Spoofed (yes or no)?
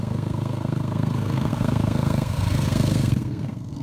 yes